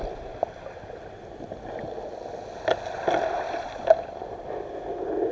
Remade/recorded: recorded